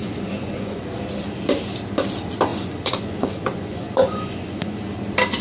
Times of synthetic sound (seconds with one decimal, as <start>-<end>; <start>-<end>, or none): 0.0-0.8; 2.5-4.8